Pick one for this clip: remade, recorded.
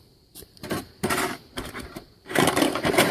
remade